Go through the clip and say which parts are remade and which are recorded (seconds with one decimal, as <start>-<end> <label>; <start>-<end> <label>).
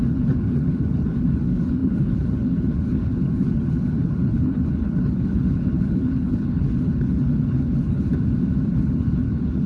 0.0-8.1 remade; 8.1-8.7 recorded; 8.7-9.7 remade